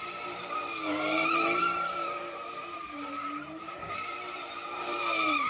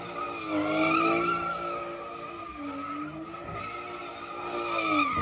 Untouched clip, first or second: second